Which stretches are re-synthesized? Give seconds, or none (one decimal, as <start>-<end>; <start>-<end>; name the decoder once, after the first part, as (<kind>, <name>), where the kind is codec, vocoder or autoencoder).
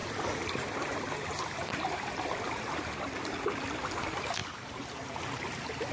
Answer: 0.0-2.9 (vocoder, BigVGAN v2)